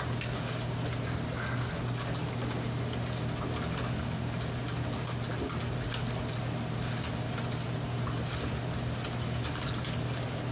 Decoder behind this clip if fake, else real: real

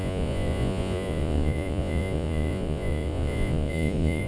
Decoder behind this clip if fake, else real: fake, vocoder, Vocos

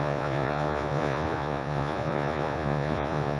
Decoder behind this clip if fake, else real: fake, vocoder, Vocos